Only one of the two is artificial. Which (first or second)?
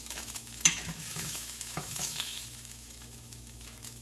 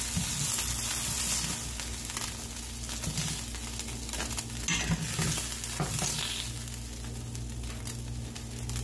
first